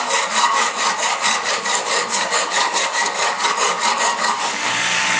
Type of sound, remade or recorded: remade